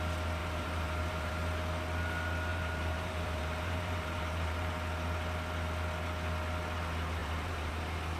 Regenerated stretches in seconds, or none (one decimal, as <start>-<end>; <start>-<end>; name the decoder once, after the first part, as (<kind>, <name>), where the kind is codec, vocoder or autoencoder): 0.4-1.3 (vocoder, BigVGAN v2); 2.5-4.7; 7.2-7.7